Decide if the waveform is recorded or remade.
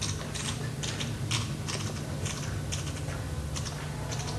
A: recorded